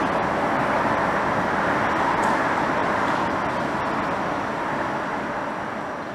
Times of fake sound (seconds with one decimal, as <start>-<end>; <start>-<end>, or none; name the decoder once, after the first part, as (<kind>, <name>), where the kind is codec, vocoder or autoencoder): 2.8-4.8 (vocoder, BigVGAN v2)